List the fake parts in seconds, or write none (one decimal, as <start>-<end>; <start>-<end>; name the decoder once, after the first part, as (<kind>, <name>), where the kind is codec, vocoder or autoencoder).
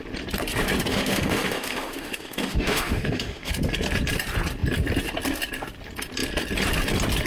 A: 0.9-3.5 (autoencoder, DAC-VAE)